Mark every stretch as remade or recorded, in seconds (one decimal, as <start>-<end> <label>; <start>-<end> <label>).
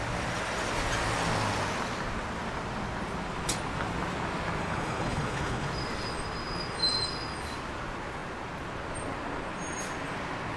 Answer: 0.0-4.6 recorded; 4.6-5.7 remade; 5.7-10.6 recorded